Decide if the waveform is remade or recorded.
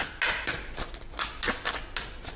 recorded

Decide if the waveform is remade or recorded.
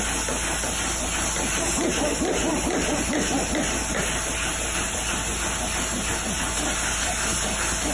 recorded